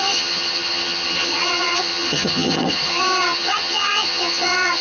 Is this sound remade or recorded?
remade